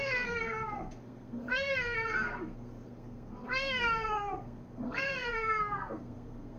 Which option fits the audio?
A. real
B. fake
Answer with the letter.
B